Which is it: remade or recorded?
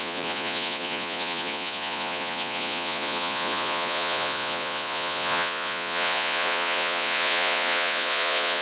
remade